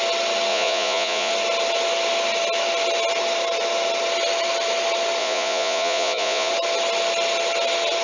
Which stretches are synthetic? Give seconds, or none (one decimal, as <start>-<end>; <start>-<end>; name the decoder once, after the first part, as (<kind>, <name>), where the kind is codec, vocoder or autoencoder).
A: 0.5-1.3 (vocoder, Vocos); 5.2-6.5